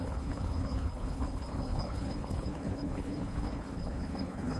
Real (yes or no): no